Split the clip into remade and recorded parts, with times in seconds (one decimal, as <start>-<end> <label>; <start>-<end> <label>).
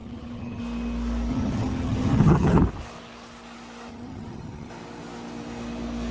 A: 0.0-0.6 remade; 0.6-1.3 recorded; 1.3-2.6 remade; 2.6-3.9 recorded; 3.9-4.7 remade; 4.7-6.1 recorded